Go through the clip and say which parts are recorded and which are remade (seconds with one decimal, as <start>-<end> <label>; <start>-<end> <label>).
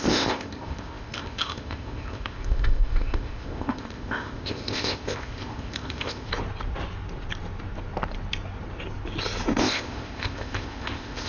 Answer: 0.0-6.3 remade; 6.3-9.6 recorded; 9.6-11.3 remade